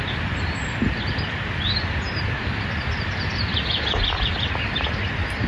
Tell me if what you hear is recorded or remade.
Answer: recorded